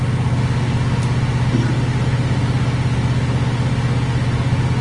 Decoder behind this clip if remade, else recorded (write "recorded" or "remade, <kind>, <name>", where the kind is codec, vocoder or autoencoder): recorded